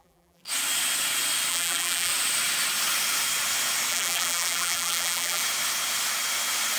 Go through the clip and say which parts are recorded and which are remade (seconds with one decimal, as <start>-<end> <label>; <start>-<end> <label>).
0.0-0.4 remade; 0.4-1.5 recorded; 1.5-2.1 remade; 2.1-3.9 recorded; 3.9-5.4 remade; 5.4-6.8 recorded